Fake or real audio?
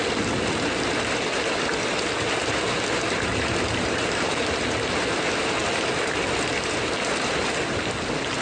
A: real